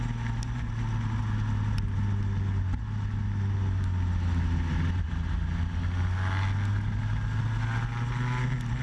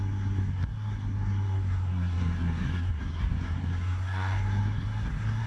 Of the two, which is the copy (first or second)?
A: second